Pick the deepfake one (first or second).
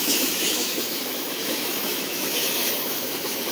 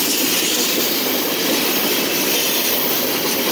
first